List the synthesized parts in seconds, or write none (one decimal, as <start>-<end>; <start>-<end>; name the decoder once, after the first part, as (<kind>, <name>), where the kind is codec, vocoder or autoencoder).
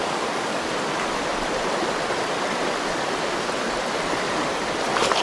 0.0-0.7 (codec, DAC)